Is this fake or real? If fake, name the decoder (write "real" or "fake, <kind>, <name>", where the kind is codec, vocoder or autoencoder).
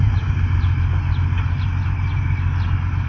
real